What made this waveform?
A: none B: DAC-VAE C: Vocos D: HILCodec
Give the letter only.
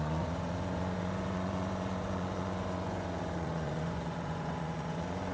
C